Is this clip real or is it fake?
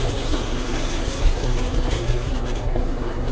fake